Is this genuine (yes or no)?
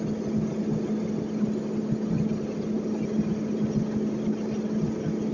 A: yes